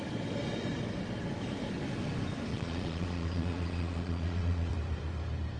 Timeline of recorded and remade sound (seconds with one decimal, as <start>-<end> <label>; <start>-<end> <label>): 0.0-2.5 recorded; 2.5-4.7 remade; 4.7-5.6 recorded